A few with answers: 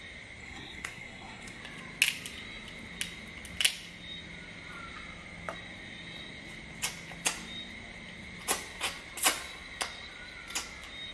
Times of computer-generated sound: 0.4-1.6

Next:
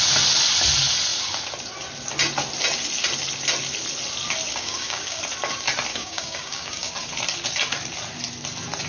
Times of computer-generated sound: 4.5-5.2; 5.9-6.9

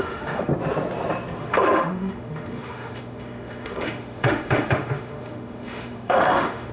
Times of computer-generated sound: 0.0-0.5; 1.4-6.7

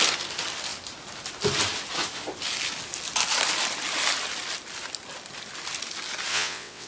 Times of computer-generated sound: 6.3-6.9